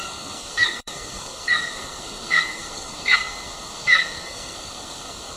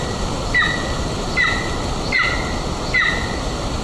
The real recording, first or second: second